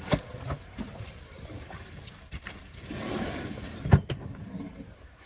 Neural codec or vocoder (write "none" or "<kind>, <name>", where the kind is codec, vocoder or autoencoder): vocoder, BigVGAN v2